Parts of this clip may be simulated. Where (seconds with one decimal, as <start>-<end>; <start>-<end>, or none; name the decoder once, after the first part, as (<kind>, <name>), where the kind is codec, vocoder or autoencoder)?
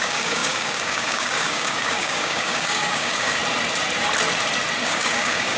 0.0-3.4 (codec, DAC); 4.8-5.6